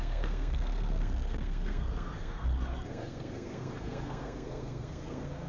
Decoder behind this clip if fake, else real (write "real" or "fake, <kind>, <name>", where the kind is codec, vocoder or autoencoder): fake, codec, SNAC